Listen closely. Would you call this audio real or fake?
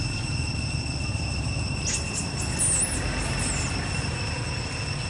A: real